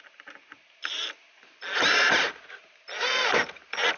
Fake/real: real